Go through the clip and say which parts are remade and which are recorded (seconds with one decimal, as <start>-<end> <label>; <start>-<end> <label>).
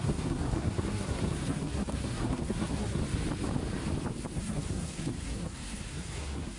0.0-3.0 remade; 3.0-4.4 recorded; 4.4-6.6 remade